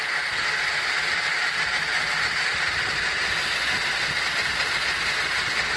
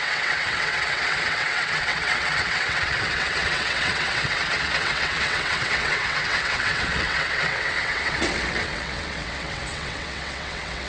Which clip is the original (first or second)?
first